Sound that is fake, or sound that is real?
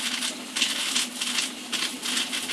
real